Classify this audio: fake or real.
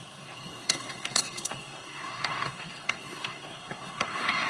fake